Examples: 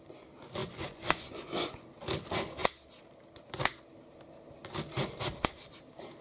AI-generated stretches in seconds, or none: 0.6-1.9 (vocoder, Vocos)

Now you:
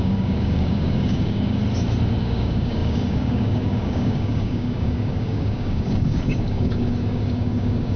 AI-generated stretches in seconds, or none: 0.0-1.6 (codec, DAC); 2.2-8.0

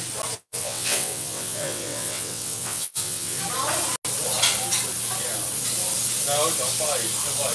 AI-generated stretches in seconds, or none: 0.4-3.4 (vocoder, WaveNeXt)

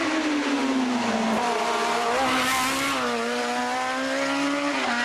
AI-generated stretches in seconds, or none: none